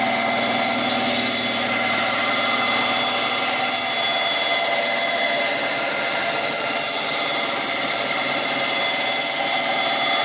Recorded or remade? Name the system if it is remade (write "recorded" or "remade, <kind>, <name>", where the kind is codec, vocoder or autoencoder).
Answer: recorded